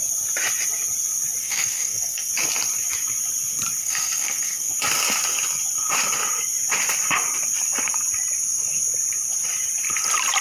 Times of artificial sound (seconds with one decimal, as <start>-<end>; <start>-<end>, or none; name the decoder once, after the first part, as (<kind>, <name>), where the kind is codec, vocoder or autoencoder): 1.4-2.3 (codec, SNAC); 3.8-4.7